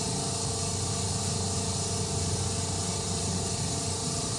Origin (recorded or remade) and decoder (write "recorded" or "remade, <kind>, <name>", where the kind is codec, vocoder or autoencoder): recorded